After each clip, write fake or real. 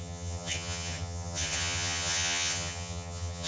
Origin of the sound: fake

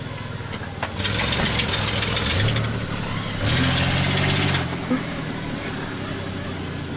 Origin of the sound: real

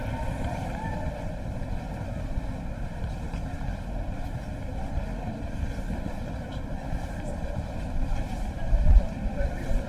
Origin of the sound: fake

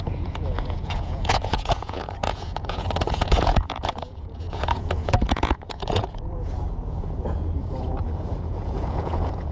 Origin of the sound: fake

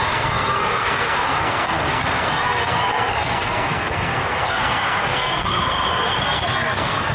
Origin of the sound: fake